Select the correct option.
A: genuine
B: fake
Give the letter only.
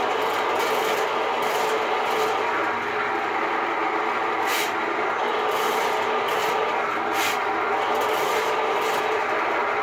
A